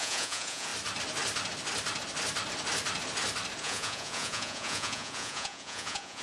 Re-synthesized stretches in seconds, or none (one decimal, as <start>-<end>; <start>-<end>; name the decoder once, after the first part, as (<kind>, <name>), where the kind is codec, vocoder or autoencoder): 0.0-0.7 (vocoder, Vocos); 3.6-6.2